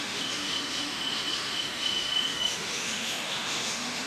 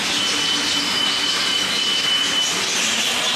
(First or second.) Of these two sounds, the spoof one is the first